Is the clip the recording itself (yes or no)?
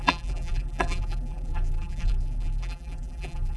no